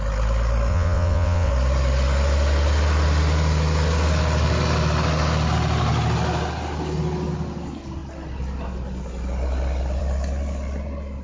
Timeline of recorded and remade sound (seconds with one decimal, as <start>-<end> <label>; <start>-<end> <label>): 0.0-0.7 recorded; 0.7-1.5 remade; 1.5-11.2 recorded

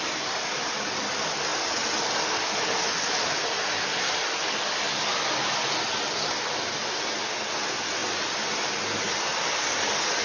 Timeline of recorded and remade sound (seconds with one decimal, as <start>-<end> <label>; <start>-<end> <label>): 0.0-10.2 recorded

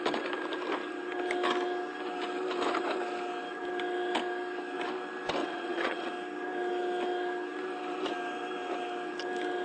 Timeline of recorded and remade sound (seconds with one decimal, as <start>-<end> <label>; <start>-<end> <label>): 0.0-5.4 recorded; 5.4-6.1 remade; 6.1-9.6 recorded

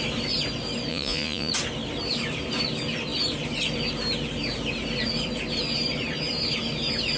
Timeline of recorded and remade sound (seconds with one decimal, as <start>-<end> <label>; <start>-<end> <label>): 0.0-0.9 recorded; 0.9-1.5 remade; 1.5-7.2 recorded

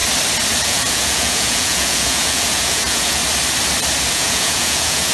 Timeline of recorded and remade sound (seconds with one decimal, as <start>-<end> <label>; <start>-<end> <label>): 0.0-0.6 recorded; 0.6-3.2 remade; 3.2-4.1 recorded; 4.1-5.1 remade

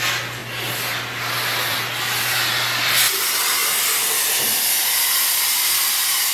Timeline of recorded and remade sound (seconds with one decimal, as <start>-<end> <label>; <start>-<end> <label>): 0.0-6.3 recorded